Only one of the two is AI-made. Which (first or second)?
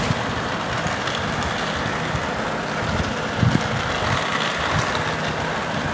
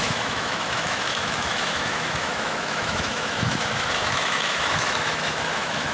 second